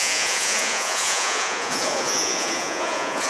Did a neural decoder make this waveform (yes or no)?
yes